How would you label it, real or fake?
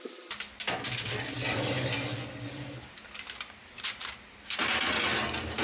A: real